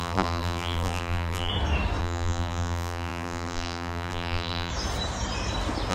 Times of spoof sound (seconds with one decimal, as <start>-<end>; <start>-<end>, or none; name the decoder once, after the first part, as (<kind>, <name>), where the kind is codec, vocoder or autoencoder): 0.0-1.5 (vocoder, BigVGAN v2); 2.0-4.7